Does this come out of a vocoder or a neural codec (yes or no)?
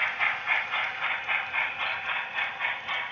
no